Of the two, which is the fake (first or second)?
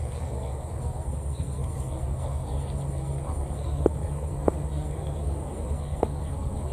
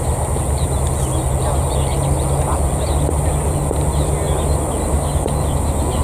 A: first